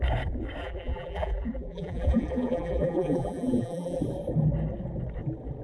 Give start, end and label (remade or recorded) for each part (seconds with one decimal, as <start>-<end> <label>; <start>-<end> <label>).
0.0-0.6 recorded; 0.6-4.0 remade; 4.0-5.6 recorded